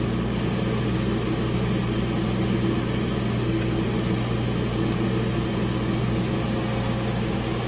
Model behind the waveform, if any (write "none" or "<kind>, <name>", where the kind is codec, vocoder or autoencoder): none